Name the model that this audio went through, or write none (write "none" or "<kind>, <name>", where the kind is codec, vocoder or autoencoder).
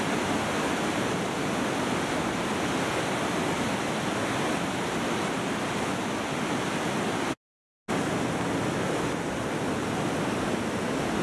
none